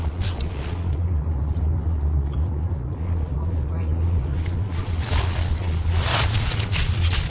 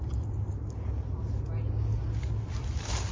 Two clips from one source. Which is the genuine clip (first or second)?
second